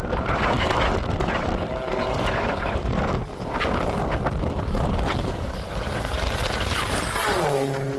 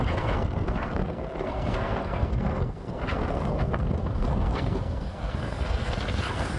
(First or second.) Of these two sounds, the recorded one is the first